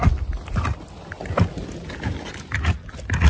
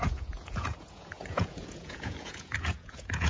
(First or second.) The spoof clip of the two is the second